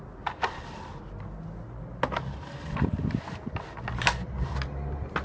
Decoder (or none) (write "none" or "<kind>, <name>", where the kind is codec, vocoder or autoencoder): none